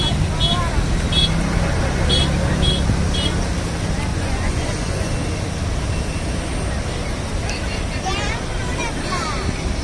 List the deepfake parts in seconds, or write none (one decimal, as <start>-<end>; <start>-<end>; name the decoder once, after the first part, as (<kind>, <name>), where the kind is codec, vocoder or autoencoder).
4.1-5.1 (vocoder, Vocos)